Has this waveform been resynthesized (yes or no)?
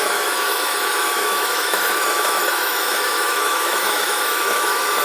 yes